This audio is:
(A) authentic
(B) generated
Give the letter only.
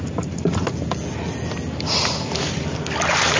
A